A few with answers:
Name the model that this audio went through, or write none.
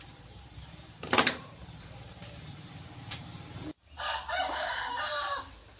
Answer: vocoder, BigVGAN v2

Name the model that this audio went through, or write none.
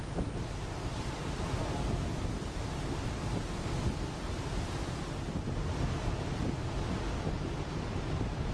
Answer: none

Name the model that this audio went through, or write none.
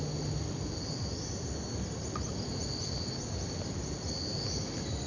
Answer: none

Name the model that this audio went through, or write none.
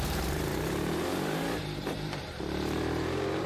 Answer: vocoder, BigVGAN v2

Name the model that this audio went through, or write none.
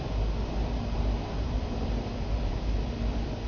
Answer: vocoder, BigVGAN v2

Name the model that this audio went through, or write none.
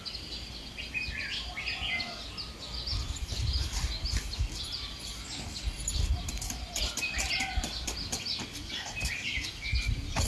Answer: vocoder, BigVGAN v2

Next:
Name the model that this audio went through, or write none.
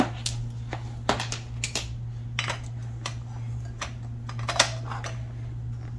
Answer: none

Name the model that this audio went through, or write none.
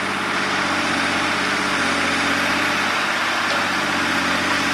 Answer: vocoder, BigVGAN v2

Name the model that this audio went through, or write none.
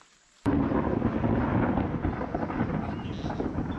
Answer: none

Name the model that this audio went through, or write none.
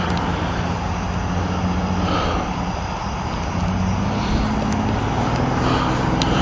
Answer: none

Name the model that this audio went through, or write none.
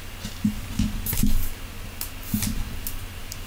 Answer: none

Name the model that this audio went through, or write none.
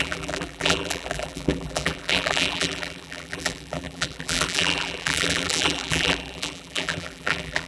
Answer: vocoder, BigVGAN v2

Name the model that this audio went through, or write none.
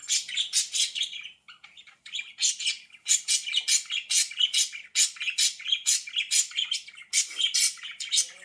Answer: none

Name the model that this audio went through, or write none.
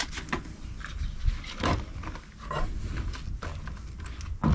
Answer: none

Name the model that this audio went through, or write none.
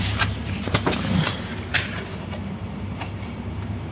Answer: vocoder, BigVGAN v2